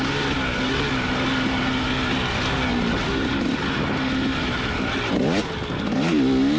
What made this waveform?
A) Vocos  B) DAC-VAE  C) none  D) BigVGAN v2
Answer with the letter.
C